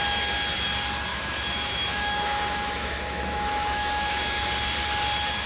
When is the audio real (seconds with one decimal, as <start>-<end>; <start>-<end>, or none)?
0.0-1.1; 4.4-5.5